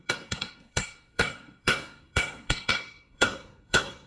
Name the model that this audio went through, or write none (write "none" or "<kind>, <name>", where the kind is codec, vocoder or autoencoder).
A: codec, SNAC